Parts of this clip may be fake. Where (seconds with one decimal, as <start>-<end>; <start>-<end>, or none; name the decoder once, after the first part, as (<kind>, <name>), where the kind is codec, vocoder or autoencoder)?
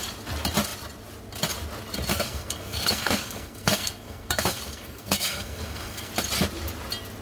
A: 2.1-6.1 (codec, SNAC)